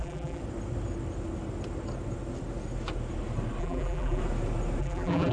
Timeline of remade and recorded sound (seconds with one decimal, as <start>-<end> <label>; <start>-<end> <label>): 0.0-0.4 remade; 0.4-3.6 recorded; 3.6-4.2 remade; 4.2-4.8 recorded; 4.8-5.3 remade